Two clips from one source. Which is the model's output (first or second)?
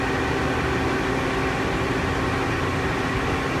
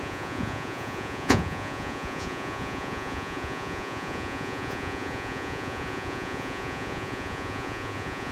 second